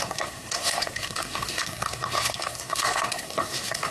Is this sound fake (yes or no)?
yes